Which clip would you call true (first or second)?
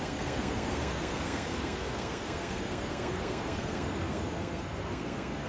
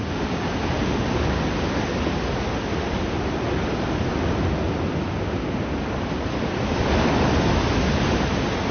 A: second